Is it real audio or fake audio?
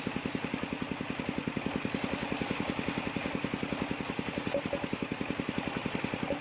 real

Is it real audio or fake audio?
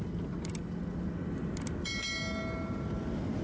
real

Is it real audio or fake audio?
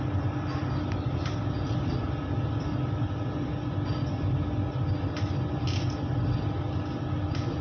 real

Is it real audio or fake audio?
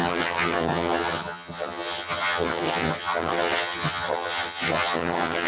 fake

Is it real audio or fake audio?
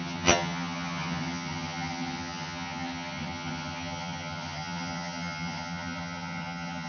fake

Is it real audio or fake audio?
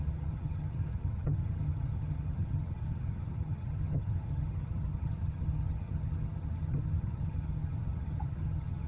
fake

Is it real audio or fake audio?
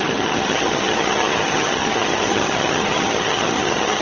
fake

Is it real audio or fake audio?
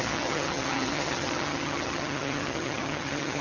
fake